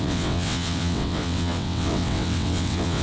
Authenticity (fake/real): fake